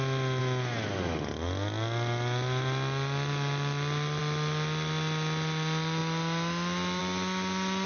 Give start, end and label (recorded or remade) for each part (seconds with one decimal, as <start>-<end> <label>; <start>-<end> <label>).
0.0-7.9 recorded